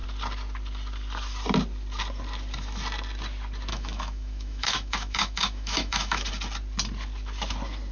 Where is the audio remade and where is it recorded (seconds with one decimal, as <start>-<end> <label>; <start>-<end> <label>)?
0.0-3.7 recorded; 3.7-6.3 remade; 6.3-7.9 recorded